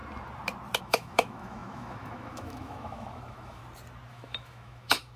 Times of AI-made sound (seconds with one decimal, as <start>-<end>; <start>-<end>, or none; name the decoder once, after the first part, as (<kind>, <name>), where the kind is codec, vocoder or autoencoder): 0.8-3.6 (autoencoder, DAC-VAE); 4.1-5.2

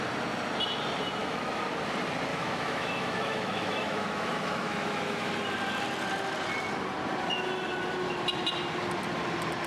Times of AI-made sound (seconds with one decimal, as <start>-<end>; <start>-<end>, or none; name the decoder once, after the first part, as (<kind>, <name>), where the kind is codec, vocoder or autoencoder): 1.2-1.7 (autoencoder, DAC-VAE); 2.3-5.3

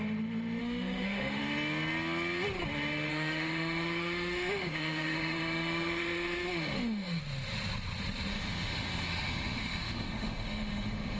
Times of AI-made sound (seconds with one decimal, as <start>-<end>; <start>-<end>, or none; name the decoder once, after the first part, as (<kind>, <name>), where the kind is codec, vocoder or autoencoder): 0.6-1.4 (autoencoder, DAC-VAE); 3.1-7.2; 8.3-11.2

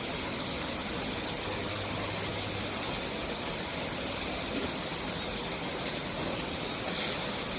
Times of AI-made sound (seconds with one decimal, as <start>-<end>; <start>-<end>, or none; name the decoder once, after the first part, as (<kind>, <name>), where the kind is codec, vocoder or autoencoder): none

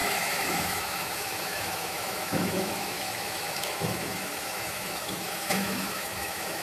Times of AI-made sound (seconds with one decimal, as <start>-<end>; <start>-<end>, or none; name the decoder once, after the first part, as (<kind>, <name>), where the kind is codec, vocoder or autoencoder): 0.0-6.6 (autoencoder, DAC-VAE)